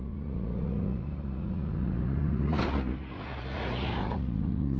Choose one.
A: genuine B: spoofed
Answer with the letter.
B